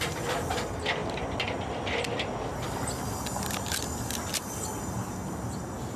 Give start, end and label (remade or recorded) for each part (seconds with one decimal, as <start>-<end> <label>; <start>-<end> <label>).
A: 0.0-6.0 recorded